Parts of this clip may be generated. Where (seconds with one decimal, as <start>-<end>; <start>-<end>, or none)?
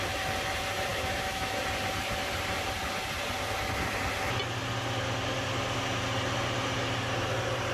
0.9-1.6